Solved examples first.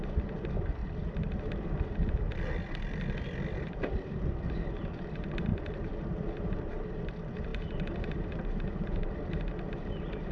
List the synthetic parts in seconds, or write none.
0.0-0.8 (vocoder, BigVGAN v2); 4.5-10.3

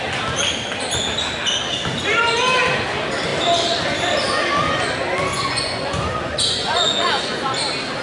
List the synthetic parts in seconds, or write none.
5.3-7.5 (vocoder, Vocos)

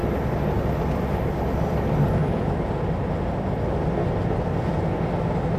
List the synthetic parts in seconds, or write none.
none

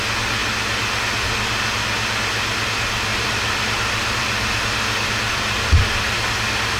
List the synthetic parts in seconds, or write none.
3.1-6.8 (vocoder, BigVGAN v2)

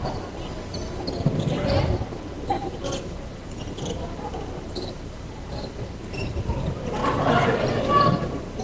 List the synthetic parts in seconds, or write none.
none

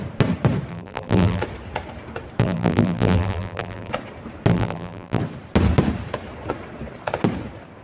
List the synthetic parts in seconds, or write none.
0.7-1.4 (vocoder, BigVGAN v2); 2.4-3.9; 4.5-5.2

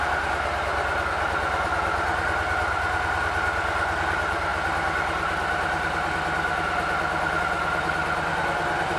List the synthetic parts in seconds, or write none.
none